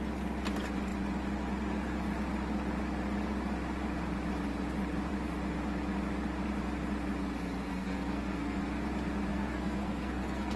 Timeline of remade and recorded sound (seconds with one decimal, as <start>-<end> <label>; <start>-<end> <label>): 0.0-7.7 recorded; 7.7-8.6 remade; 8.6-9.3 recorded; 9.3-10.6 remade